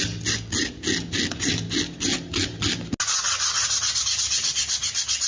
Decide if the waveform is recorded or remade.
recorded